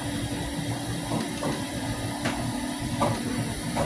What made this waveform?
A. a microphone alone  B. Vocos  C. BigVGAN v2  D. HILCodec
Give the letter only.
C